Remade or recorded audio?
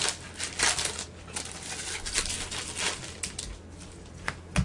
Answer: recorded